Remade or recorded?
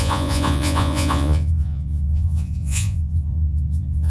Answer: remade